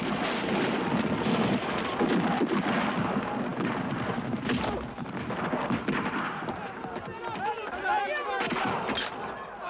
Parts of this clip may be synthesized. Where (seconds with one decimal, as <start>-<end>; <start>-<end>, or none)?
none